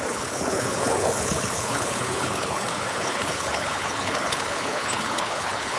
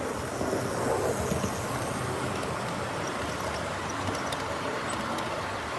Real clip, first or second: second